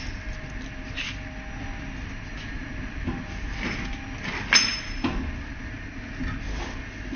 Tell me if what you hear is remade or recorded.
recorded